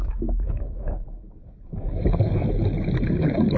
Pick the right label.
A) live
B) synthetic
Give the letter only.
B